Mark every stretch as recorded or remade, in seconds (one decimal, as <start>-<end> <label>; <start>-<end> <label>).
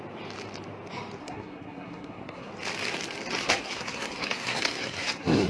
0.0-1.2 recorded; 1.2-2.5 remade; 2.5-3.4 recorded; 3.4-5.5 remade